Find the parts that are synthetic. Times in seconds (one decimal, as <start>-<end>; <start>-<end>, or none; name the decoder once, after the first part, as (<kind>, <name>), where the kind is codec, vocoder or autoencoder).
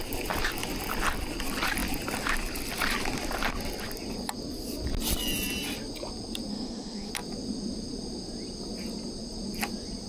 6.5-7.1 (autoencoder, DAC-VAE)